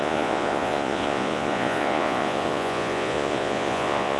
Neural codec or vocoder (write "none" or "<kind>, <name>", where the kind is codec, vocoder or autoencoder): vocoder, Vocos